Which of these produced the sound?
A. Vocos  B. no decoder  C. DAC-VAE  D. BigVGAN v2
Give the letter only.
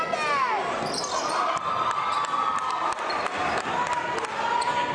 B